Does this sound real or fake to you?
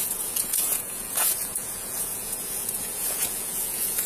fake